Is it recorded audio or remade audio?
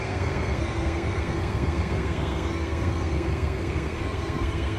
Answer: remade